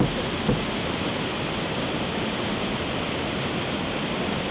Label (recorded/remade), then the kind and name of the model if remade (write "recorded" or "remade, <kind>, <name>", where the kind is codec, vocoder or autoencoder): recorded